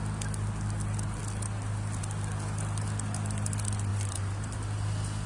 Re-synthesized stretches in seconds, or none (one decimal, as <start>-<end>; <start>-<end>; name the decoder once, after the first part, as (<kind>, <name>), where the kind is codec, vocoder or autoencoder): none